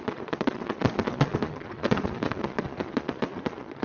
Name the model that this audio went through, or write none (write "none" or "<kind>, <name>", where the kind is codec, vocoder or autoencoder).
vocoder, Vocos